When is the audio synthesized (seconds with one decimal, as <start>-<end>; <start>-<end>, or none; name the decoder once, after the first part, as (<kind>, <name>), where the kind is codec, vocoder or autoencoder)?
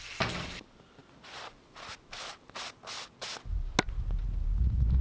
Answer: none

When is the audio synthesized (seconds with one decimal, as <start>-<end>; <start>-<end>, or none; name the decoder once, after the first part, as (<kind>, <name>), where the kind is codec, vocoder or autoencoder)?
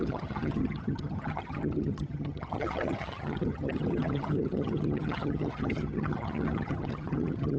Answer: 0.0-7.6 (vocoder, HiFi-GAN)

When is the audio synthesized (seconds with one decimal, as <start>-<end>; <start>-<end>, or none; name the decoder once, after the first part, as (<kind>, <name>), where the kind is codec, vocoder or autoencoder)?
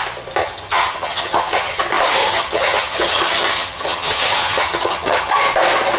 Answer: 0.4-1.8 (vocoder, HiFi-GAN); 2.2-5.3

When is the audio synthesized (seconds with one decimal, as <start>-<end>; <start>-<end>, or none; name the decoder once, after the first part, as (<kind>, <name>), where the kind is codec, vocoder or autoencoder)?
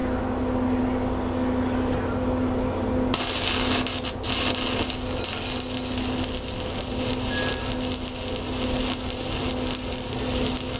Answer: none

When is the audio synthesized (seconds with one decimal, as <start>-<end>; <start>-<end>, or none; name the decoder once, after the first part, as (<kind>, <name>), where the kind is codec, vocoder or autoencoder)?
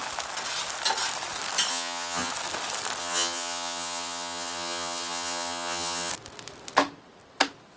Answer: 1.7-2.3 (vocoder, HiFi-GAN); 3.0-6.1